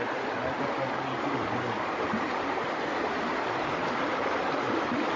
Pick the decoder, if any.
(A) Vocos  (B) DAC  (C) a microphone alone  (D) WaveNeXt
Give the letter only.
C